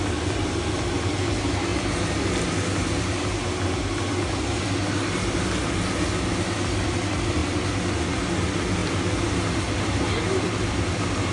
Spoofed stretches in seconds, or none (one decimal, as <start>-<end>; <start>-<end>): none

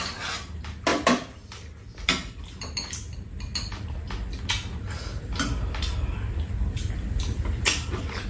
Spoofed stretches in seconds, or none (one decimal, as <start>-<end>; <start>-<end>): none

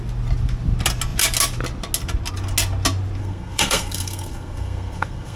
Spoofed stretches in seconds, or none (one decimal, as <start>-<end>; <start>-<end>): 3.2-5.4

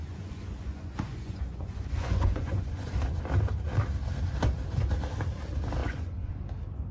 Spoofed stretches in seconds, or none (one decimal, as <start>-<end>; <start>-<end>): 0.0-2.9; 5.8-6.3

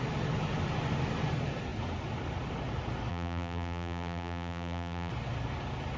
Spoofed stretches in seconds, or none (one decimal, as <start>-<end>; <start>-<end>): 3.1-5.1

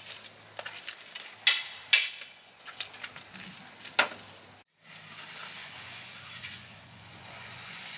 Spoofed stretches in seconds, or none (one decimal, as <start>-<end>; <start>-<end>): 2.0-2.8; 5.6-8.0

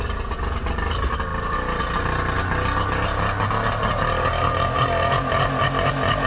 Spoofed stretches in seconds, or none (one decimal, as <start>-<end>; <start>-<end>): none

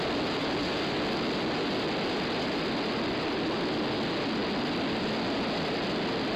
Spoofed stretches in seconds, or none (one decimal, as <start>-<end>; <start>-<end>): none